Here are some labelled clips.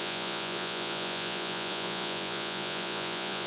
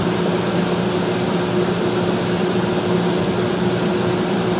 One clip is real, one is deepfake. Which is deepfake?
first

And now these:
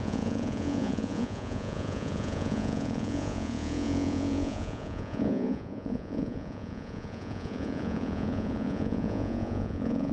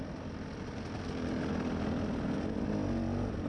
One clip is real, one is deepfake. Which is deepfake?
first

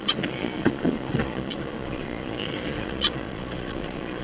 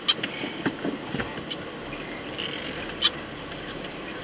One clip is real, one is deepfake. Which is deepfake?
first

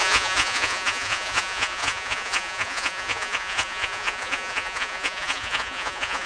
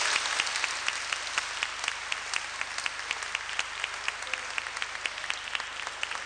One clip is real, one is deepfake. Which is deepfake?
first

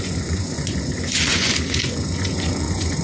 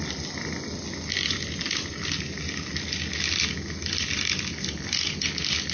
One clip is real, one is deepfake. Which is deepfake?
first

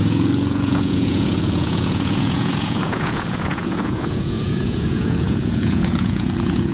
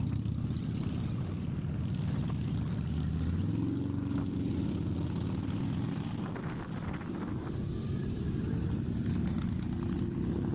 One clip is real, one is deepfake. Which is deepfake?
first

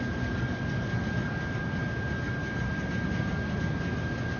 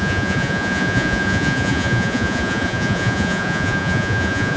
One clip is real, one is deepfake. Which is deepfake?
second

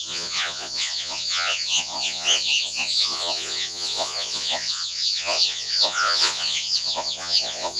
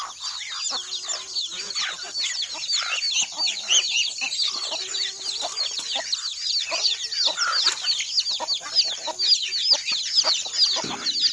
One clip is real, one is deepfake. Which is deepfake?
first